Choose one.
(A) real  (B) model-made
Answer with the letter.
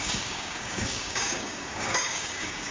B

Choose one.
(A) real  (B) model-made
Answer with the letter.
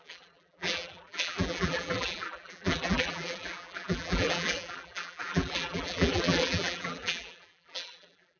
B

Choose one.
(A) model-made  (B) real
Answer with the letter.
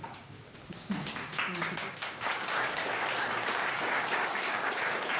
A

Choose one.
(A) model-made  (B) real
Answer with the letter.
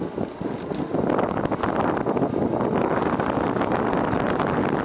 B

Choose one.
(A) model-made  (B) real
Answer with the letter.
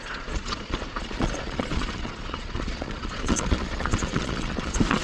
A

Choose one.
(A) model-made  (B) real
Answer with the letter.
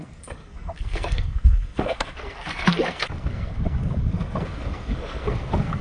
A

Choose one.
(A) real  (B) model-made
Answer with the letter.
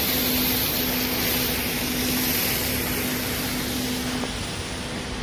A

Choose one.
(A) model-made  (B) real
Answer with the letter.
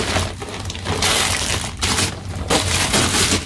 B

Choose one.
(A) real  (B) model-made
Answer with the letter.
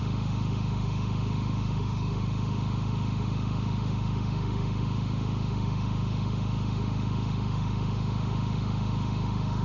B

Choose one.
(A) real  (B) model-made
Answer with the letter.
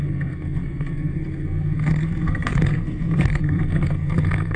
B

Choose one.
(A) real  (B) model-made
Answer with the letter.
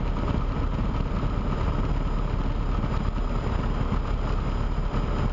A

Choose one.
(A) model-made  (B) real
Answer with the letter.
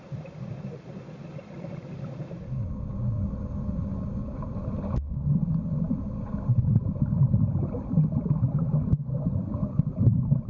B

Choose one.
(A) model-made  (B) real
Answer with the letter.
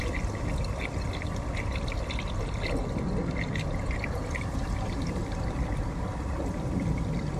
B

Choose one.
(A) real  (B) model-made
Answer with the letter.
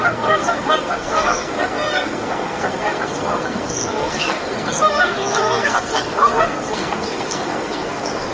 B